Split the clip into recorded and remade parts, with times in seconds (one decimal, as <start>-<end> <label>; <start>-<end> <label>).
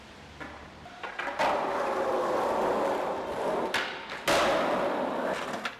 0.0-5.8 recorded